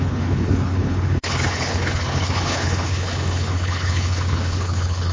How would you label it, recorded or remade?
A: remade